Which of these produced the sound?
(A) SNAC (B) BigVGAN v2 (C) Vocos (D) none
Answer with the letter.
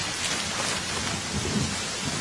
D